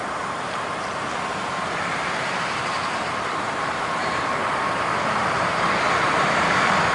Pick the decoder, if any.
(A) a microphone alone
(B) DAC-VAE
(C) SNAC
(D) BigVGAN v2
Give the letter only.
D